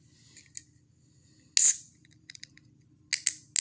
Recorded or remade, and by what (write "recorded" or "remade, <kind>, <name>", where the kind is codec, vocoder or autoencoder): recorded